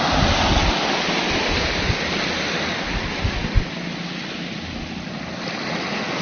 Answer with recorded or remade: recorded